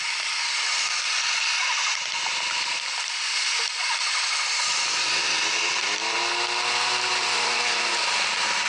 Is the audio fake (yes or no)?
no